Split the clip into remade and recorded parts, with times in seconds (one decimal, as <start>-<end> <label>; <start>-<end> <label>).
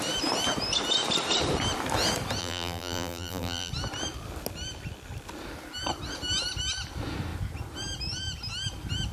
0.0-2.4 recorded; 2.4-3.7 remade; 3.7-9.1 recorded